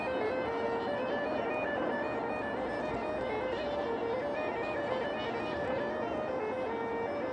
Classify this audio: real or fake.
real